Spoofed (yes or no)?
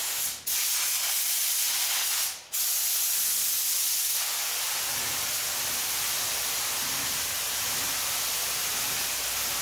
no